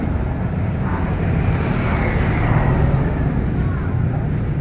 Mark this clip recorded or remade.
recorded